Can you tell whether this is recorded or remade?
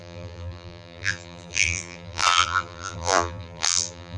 remade